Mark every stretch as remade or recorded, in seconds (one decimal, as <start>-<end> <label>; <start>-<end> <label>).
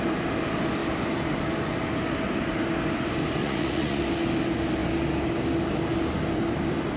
0.0-3.4 recorded; 3.4-4.0 remade; 4.0-7.0 recorded